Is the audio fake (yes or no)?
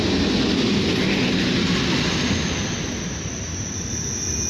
no